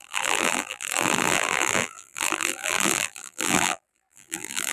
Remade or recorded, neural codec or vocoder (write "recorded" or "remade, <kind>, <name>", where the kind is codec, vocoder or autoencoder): remade, vocoder, BigVGAN v2